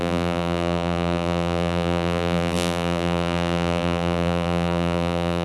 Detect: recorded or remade remade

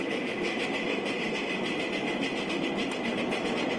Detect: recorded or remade recorded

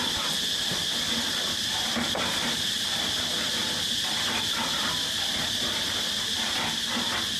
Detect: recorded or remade remade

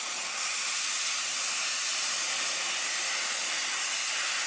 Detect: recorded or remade recorded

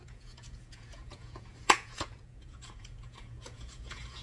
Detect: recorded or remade remade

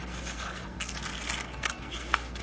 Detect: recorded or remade remade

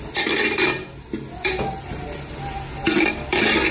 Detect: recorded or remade recorded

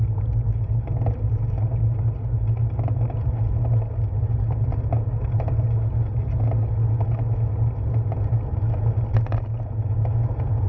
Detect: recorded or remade recorded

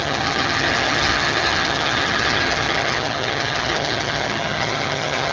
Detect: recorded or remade remade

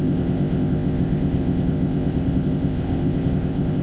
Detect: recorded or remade remade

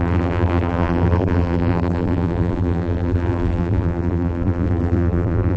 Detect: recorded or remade remade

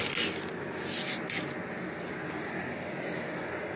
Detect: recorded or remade recorded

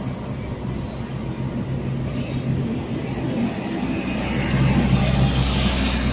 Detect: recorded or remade recorded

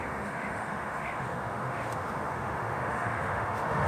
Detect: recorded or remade remade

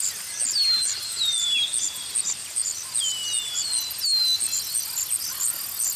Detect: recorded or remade recorded